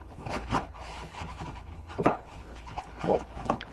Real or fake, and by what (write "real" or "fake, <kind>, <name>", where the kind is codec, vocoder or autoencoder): fake, codec, HILCodec